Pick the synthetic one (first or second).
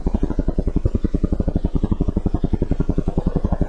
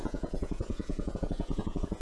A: second